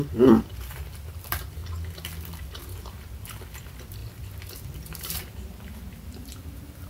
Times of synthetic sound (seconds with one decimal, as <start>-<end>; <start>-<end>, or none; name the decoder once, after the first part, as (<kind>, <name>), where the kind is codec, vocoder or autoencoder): 0.0-1.6 (vocoder, BigVGAN v2); 2.8-6.9